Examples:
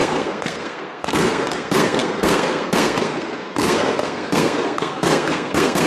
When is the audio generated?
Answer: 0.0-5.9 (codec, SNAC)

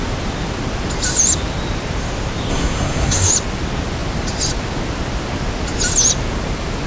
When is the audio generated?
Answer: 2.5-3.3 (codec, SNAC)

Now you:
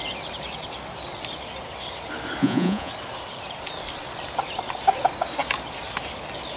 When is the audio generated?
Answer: 2.4-2.9 (vocoder, Vocos)